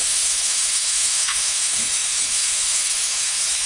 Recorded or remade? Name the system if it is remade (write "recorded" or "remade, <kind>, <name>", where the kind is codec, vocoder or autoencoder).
remade, autoencoder, DAC-VAE